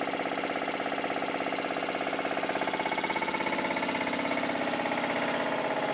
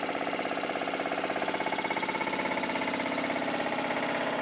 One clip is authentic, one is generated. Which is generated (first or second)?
second